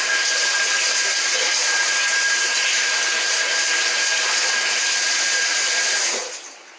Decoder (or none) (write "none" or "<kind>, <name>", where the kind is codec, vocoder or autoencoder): none